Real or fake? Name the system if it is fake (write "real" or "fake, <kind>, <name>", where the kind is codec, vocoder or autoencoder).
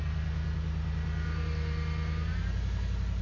real